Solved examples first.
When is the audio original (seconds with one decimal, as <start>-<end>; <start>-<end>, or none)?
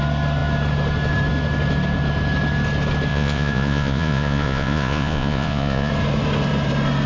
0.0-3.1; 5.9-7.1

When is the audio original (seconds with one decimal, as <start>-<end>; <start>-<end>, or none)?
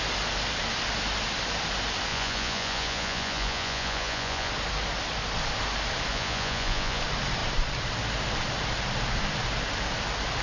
0.0-2.1; 4.5-6.1; 7.0-10.4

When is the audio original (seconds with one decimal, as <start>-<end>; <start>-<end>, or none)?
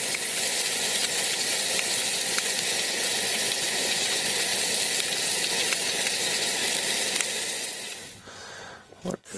4.5-5.5; 6.6-7.3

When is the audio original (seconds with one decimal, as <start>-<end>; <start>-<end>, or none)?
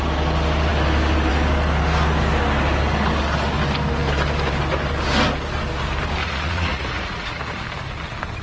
0.0-6.2; 7.6-8.4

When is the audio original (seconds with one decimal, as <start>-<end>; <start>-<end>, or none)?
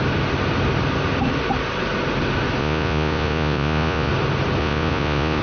0.0-2.6; 4.1-4.6